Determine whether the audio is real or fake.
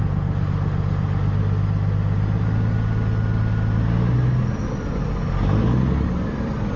real